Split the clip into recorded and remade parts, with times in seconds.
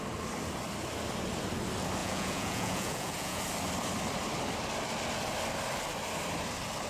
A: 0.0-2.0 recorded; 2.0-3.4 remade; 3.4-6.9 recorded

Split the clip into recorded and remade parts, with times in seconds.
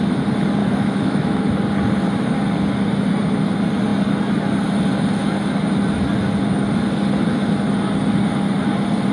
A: 0.0-0.6 recorded; 0.6-1.4 remade; 1.4-9.1 recorded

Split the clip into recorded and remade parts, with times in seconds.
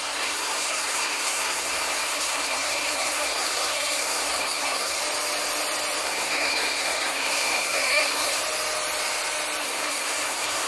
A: 0.0-5.0 remade; 5.0-6.0 recorded; 6.0-8.4 remade; 8.4-9.6 recorded; 9.6-10.7 remade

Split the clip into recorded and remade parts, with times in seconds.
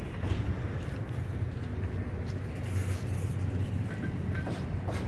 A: 0.0-1.7 remade; 1.7-3.7 recorded; 3.7-5.1 remade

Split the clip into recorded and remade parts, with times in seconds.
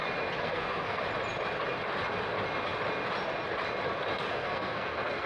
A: 0.0-0.4 recorded; 0.4-1.0 remade; 1.0-4.3 recorded; 4.3-5.3 remade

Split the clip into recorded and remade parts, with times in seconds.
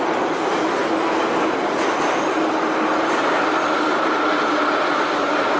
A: 0.0-5.6 recorded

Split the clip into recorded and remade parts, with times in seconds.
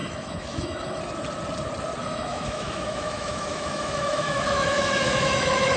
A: 0.0-1.0 remade; 1.0-2.0 recorded; 2.0-5.8 remade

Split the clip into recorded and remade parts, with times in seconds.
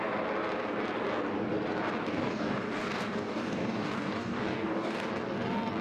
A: 0.0-2.0 recorded; 2.0-5.1 remade; 5.1-5.8 recorded